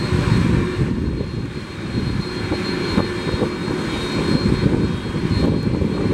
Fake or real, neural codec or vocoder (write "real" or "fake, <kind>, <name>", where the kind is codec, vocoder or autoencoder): real